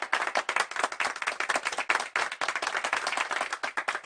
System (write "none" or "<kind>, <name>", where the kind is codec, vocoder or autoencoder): none